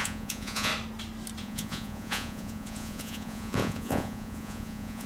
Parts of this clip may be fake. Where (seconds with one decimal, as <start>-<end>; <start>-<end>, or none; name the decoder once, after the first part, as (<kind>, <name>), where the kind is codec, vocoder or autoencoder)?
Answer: 0.0-0.7 (vocoder, Vocos); 1.4-5.1

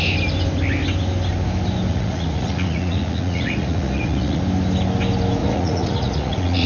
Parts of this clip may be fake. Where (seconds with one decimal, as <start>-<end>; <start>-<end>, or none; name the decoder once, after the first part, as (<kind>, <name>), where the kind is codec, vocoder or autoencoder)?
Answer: 1.9-4.4 (vocoder, Vocos); 5.4-6.7

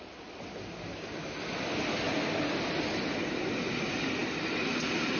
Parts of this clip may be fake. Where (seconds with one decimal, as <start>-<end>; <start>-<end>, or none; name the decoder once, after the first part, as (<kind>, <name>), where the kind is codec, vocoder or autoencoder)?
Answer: none

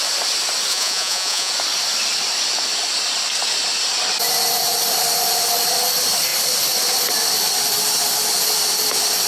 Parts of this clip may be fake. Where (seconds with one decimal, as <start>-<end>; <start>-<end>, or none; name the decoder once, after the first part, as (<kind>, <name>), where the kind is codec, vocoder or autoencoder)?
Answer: 0.7-1.5 (vocoder, Vocos)

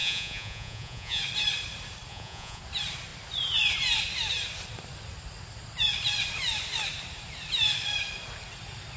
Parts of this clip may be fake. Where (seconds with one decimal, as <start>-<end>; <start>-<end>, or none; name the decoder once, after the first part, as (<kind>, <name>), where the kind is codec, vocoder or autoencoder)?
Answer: 0.0-1.2 (vocoder, Vocos); 2.1-2.6

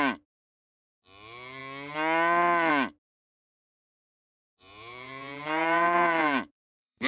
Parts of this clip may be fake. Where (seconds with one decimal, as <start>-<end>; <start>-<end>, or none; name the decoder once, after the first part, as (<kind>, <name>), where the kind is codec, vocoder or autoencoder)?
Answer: 3.9-7.1 (vocoder, Vocos)

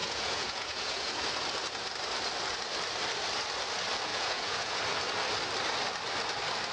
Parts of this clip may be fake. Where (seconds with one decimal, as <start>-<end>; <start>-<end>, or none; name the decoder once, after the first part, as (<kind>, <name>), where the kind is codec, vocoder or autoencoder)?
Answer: 0.0-1.2 (vocoder, Vocos); 4.1-4.8